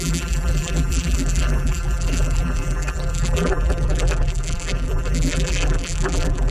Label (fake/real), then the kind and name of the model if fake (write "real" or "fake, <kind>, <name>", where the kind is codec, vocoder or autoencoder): fake, vocoder, BigVGAN v2